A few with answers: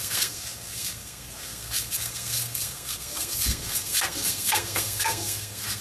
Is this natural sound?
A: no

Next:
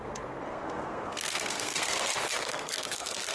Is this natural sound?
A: no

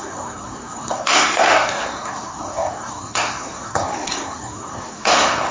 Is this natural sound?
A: no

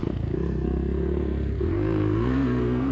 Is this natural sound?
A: no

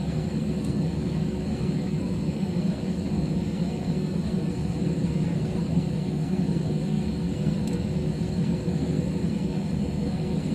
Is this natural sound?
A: no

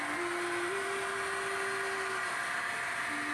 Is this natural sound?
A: yes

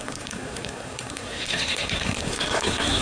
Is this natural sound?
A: no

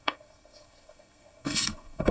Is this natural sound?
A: no